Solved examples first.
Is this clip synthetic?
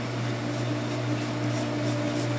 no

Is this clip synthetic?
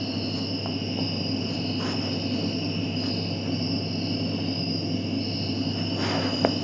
no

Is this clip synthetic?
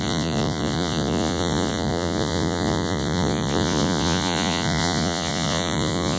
yes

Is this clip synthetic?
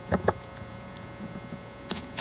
yes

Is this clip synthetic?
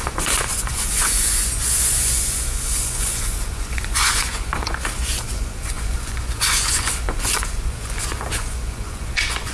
yes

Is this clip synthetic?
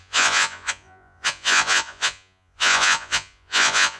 yes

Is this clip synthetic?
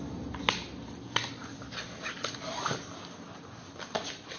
no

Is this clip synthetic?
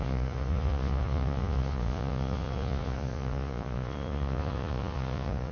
yes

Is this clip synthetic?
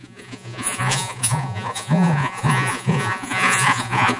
yes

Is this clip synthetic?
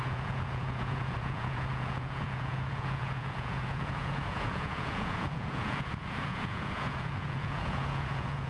yes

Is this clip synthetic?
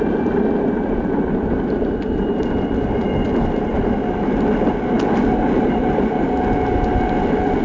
no